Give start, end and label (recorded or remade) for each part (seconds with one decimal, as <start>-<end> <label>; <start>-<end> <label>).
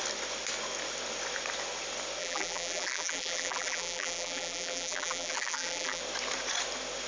0.0-2.2 recorded; 2.2-6.0 remade; 6.0-7.1 recorded